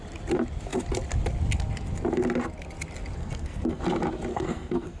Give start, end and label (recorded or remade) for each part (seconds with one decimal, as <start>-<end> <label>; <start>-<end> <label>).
0.0-3.2 recorded; 3.2-3.8 remade; 3.8-4.3 recorded; 4.3-5.0 remade

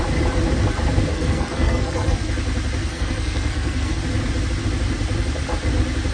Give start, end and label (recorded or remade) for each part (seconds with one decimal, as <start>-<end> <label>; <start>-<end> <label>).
0.0-1.1 recorded; 1.1-2.3 remade; 2.3-2.8 recorded; 2.8-4.0 remade; 4.0-6.1 recorded

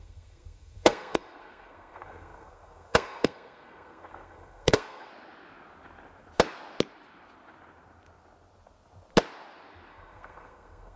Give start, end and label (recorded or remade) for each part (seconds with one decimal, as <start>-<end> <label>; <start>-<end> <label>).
0.0-5.1 remade; 5.1-9.9 recorded; 9.9-11.0 remade

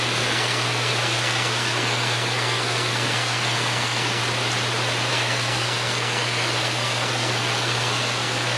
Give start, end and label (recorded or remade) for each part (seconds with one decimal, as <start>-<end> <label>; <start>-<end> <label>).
0.0-4.2 remade; 4.2-5.1 recorded; 5.1-8.6 remade

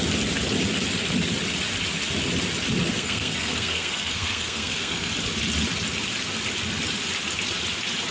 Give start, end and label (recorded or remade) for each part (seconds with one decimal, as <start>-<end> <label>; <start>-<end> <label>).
0.0-2.9 recorded; 2.9-5.1 remade; 5.1-8.1 recorded

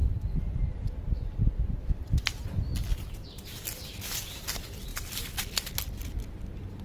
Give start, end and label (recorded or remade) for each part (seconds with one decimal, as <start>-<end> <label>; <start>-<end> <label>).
0.0-6.8 recorded

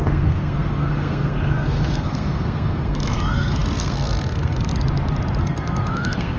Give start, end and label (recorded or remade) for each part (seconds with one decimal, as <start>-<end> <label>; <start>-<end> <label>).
0.0-4.7 remade; 4.7-5.4 recorded; 5.4-6.4 remade

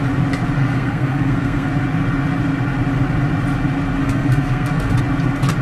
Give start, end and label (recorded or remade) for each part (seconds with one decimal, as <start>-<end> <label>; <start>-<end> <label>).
0.0-0.6 recorded; 0.6-1.7 remade; 1.7-4.0 recorded; 4.0-4.9 remade; 4.9-5.6 recorded